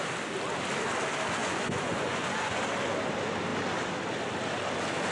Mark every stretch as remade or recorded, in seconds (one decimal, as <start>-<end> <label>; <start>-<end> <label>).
0.0-1.4 recorded; 1.4-2.6 remade; 2.6-5.1 recorded